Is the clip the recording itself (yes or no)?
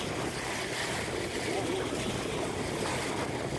yes